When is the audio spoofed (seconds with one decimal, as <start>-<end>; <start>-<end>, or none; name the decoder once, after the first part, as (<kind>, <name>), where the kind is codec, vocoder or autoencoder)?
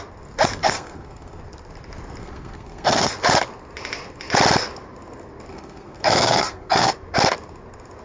0.6-1.4 (codec, SNAC); 2.2-3.1; 5.5-6.9